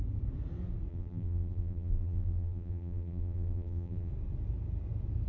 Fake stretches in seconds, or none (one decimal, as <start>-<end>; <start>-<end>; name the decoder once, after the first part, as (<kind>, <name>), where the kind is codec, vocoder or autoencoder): 0.9-4.1 (vocoder, BigVGAN v2)